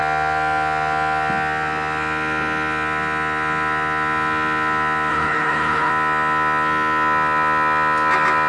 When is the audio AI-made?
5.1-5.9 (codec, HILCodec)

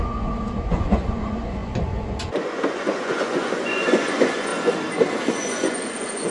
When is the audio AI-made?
0.0-4.5 (vocoder, Vocos); 5.3-6.3

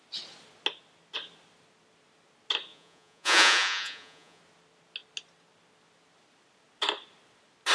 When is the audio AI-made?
2.7-4.4 (vocoder, Vocos)